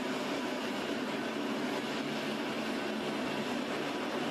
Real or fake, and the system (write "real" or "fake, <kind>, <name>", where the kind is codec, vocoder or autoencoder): real